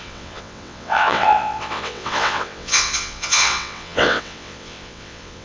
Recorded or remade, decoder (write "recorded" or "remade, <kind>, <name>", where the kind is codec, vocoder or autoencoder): remade, vocoder, WaveNeXt